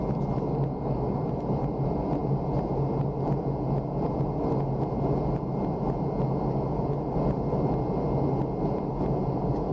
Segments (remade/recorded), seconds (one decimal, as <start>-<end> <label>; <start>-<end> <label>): 0.0-9.7 recorded

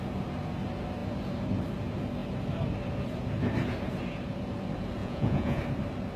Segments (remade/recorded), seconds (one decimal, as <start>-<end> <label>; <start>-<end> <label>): 0.0-5.0 recorded; 5.0-5.6 remade; 5.6-6.2 recorded

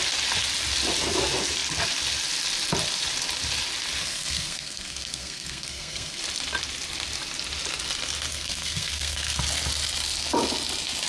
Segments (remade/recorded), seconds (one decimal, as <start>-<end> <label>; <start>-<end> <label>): 0.0-4.0 recorded; 4.0-6.2 remade; 6.2-8.3 recorded; 8.3-9.4 remade; 9.4-11.1 recorded

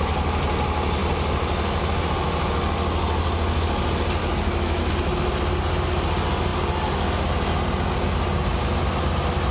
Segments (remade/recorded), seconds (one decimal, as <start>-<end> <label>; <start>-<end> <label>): 0.0-4.2 recorded; 4.2-4.9 remade; 4.9-9.5 recorded

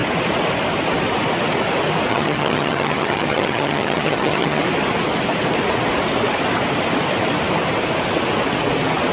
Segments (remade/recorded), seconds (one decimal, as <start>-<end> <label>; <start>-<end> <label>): 0.0-2.1 recorded; 2.1-4.6 remade; 4.6-9.1 recorded

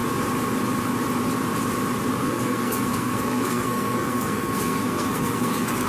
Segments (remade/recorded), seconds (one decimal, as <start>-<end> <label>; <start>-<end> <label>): 0.0-2.2 recorded; 2.2-5.9 remade